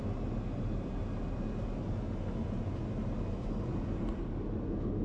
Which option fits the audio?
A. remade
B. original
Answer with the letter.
B